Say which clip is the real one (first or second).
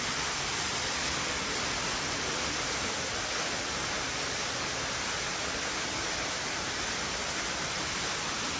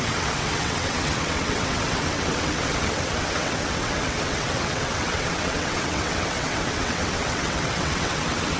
first